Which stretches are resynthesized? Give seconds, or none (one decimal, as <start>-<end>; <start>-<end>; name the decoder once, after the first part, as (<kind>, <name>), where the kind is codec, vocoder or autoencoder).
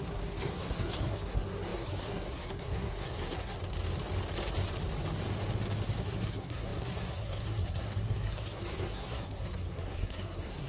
0.0-3.6 (codec, SNAC); 6.0-10.7